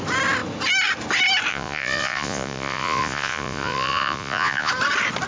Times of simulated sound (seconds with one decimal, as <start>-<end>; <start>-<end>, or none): 1.5-4.7